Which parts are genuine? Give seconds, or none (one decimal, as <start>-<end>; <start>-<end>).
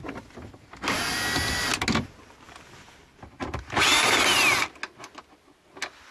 0.0-6.1